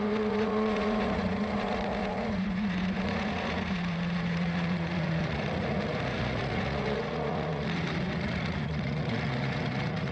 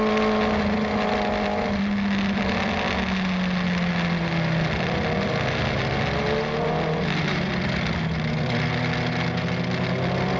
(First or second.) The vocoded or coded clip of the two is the first